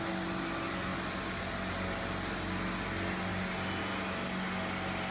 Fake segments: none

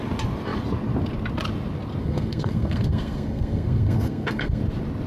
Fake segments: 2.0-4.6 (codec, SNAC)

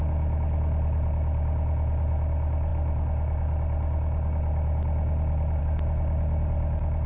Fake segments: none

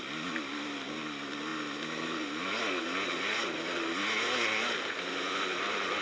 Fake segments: none

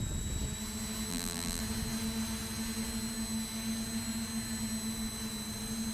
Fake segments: 1.1-1.6 (vocoder, BigVGAN v2)